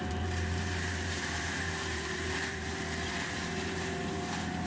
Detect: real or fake fake